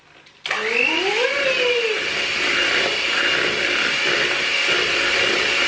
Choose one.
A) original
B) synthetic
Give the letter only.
A